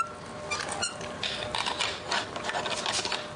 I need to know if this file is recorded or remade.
recorded